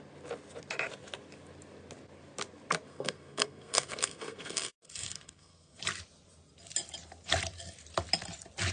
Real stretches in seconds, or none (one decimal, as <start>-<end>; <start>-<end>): 0.0-2.9; 5.8-8.7